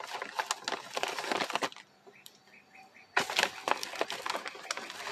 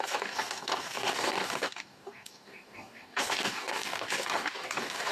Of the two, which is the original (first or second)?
first